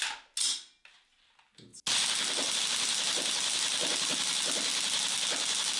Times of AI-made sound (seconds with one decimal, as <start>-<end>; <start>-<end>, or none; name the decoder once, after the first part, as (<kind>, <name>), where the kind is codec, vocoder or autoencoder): none